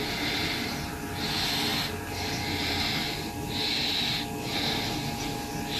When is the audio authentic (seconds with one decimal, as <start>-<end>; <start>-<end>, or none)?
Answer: 0.0-5.8